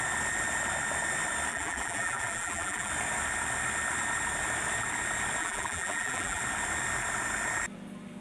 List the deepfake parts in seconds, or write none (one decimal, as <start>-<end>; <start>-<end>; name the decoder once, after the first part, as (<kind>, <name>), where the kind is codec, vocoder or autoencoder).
1.5-2.9 (vocoder, BigVGAN v2); 5.4-6.4